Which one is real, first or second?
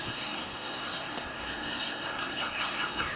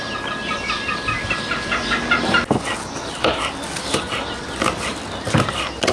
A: second